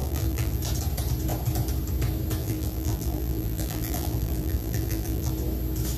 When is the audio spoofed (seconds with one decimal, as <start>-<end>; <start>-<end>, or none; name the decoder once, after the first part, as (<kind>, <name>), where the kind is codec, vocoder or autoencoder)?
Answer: 0.0-0.6 (vocoder, BigVGAN v2); 2.4-5.3